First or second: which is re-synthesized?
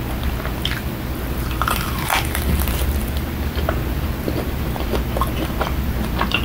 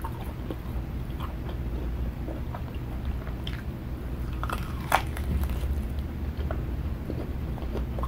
second